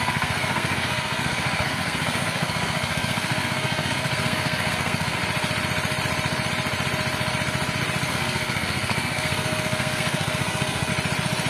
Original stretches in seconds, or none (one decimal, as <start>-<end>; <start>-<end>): 5.2-8.1; 10.9-11.5